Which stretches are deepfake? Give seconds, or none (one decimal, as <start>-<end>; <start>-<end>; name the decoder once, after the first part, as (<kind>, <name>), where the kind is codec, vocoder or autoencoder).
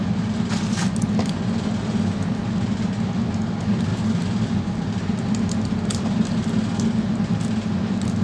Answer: none